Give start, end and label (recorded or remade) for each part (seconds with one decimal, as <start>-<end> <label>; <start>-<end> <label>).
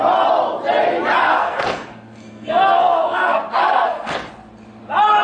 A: 0.0-1.2 recorded; 1.2-4.3 remade; 4.3-5.2 recorded